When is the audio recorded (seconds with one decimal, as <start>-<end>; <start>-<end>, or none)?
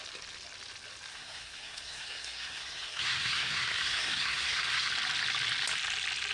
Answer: 0.0-1.1; 4.9-6.3